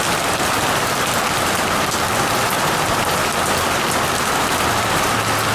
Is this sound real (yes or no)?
yes